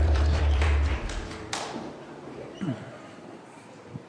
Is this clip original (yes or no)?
no